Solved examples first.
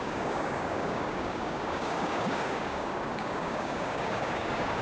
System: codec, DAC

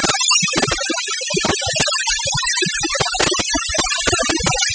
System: none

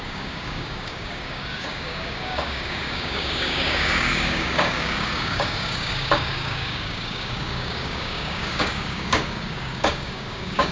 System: codec, DAC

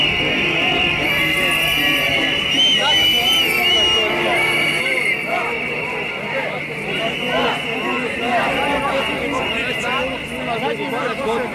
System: none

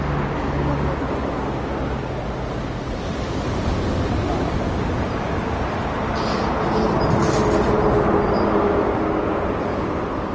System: none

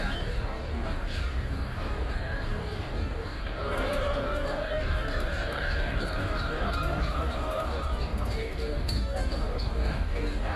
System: codec, DAC